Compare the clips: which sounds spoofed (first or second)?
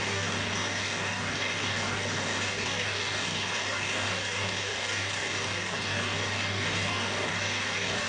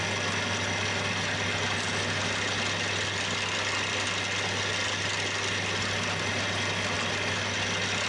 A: first